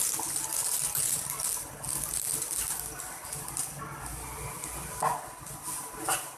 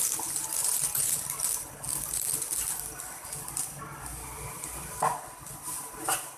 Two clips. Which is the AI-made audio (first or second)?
second